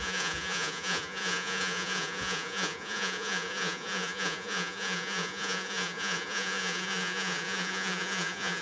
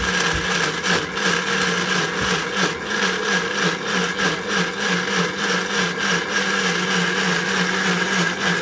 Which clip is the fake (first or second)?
first